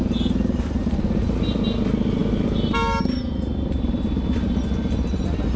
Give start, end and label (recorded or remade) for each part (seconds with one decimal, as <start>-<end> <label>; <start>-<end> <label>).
0.0-5.6 recorded